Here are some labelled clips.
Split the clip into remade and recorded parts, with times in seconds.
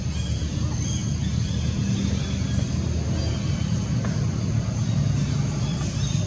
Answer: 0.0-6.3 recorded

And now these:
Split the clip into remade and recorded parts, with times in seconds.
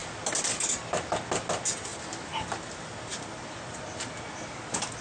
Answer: 0.0-5.0 recorded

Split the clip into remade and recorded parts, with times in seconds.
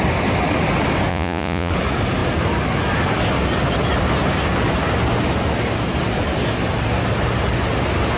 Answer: 0.0-1.1 recorded; 1.1-1.7 remade; 1.7-8.2 recorded